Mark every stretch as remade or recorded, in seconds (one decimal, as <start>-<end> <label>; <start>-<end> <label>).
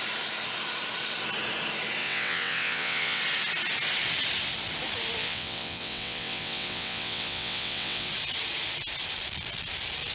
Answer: 0.0-2.0 recorded; 2.0-3.2 remade; 3.2-5.2 recorded; 5.2-8.1 remade; 8.1-10.1 recorded